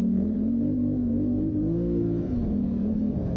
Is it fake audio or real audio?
fake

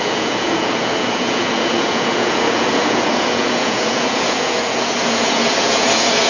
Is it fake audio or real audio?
fake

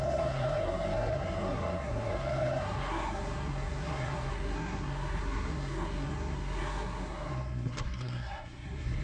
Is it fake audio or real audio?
fake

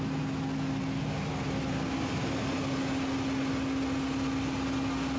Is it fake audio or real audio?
real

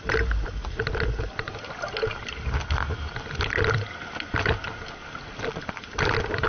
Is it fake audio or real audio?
real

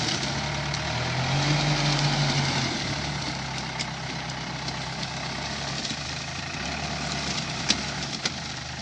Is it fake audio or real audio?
real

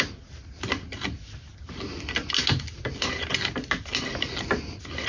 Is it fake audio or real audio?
real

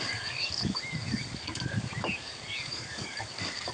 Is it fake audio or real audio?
fake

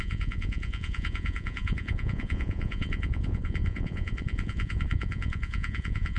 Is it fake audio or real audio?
fake